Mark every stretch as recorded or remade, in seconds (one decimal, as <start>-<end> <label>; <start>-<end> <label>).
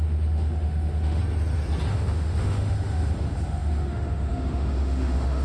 0.0-1.2 remade; 1.2-1.9 recorded; 1.9-5.4 remade